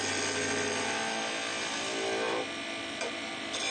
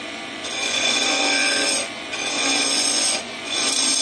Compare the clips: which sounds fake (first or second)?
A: second